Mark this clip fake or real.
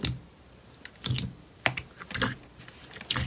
real